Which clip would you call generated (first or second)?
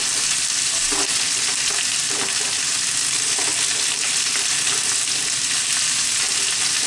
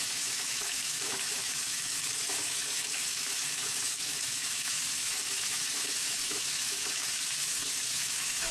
second